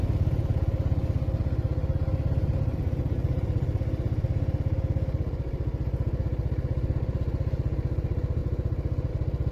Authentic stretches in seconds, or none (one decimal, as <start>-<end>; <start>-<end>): 0.0-9.5